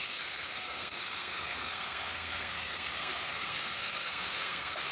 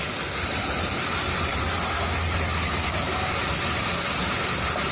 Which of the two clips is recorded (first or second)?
second